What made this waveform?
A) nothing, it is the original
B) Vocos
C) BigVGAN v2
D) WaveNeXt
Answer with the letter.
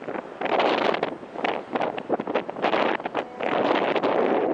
A